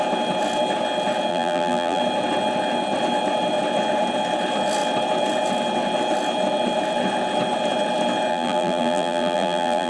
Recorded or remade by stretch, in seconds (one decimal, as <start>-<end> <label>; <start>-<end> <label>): 0.0-1.3 recorded; 1.3-2.0 remade; 2.0-8.3 recorded; 8.3-9.9 remade